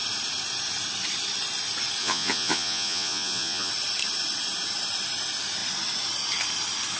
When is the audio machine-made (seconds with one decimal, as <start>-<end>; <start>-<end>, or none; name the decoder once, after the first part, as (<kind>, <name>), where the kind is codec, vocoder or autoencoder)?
2.0-3.7 (vocoder, Vocos)